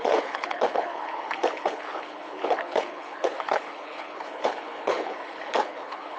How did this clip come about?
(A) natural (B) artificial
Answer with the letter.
B